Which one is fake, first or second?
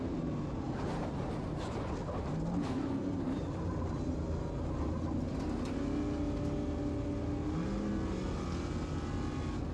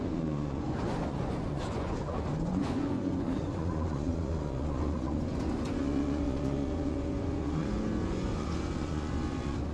second